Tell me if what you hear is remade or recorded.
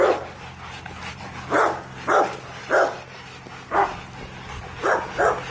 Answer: recorded